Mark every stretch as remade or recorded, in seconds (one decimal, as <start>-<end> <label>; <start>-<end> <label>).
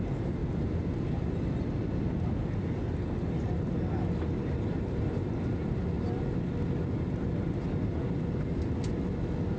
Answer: 0.0-9.6 recorded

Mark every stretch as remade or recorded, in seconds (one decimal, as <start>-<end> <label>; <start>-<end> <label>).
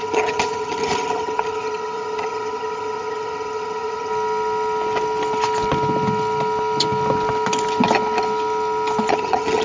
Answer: 0.0-4.1 remade; 4.1-9.1 recorded; 9.1-9.6 remade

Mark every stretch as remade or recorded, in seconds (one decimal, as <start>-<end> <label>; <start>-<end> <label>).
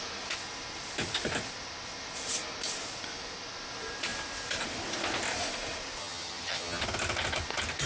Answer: 0.0-6.0 recorded; 6.0-6.8 remade; 6.8-7.9 recorded